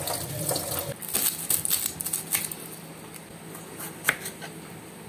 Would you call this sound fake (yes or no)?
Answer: no